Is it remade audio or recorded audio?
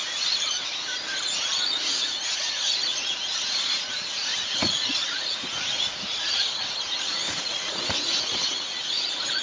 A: remade